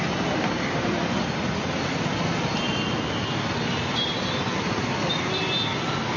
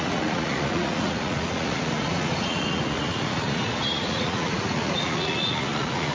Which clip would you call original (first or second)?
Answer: first